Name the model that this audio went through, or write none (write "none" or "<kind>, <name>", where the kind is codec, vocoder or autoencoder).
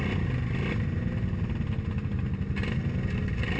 none